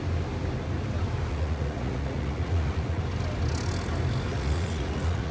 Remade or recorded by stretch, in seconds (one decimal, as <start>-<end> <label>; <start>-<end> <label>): 0.0-1.3 recorded; 1.3-3.0 remade; 3.0-4.3 recorded; 4.3-5.3 remade